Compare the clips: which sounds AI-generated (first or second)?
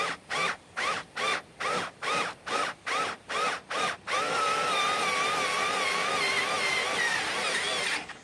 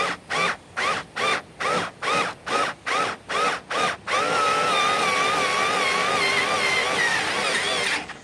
first